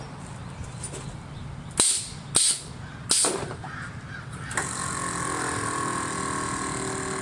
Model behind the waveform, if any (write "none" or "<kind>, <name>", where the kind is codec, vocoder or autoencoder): none